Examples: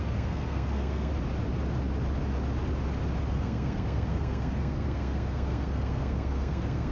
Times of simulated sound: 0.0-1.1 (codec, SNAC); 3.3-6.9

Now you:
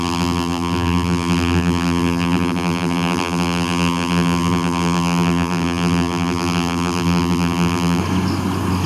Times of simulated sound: 0.0-8.0 (vocoder, BigVGAN v2)

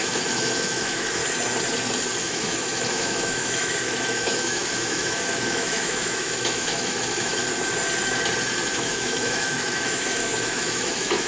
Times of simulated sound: 0.0-1.2 (autoencoder, DAC-VAE); 2.2-7.4; 8.7-11.3

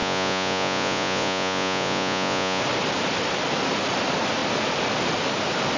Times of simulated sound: 0.0-2.6 (vocoder, Vocos)

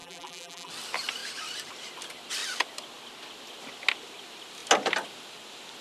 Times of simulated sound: 0.0-0.7 (vocoder, BigVGAN v2)

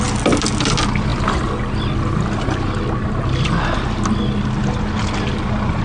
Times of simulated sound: none

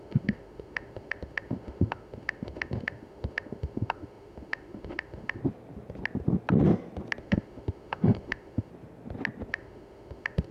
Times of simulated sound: 0.0-5.4 (autoencoder, DAC-VAE); 7.2-8.7; 9.5-10.5

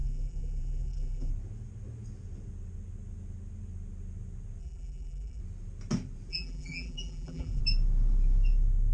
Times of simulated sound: 0.0-1.3 (vocoder, BigVGAN v2); 4.6-5.4; 6.3-7.6